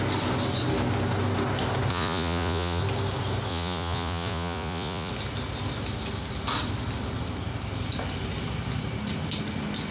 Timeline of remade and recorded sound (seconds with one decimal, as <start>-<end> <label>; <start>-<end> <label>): 0.0-1.9 recorded; 1.9-2.8 remade; 2.8-3.5 recorded; 3.5-5.1 remade; 5.1-9.9 recorded